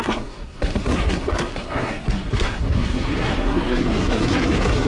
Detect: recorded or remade remade